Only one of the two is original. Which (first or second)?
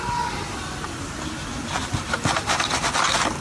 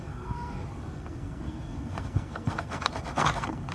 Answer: first